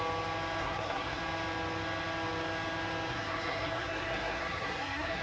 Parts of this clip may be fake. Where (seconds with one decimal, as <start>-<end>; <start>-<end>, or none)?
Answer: 0.6-1.2; 3.1-5.2